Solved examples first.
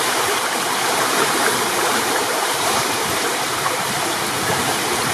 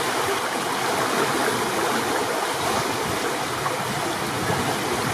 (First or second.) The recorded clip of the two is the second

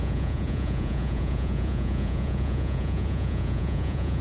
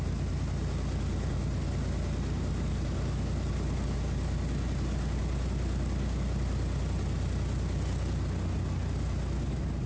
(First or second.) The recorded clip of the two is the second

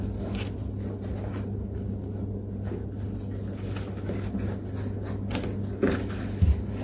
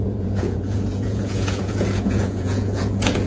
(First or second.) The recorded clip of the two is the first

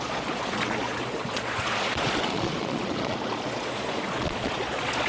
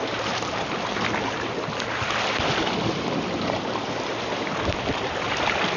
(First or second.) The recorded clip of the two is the second